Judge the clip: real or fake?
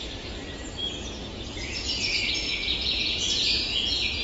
fake